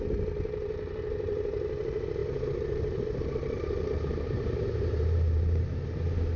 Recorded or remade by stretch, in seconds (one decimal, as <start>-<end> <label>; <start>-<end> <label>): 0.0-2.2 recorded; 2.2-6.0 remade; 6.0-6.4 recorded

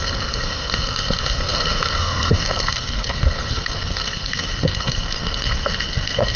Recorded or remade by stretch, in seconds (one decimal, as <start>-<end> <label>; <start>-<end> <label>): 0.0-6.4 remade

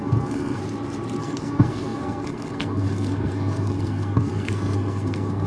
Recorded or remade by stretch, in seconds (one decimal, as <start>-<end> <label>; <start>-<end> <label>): 0.0-0.6 remade; 0.6-1.2 recorded; 1.2-5.5 remade